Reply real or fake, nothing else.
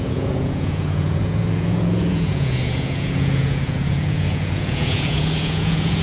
fake